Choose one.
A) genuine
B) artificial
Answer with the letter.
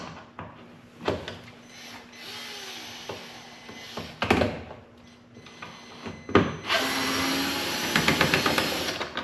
A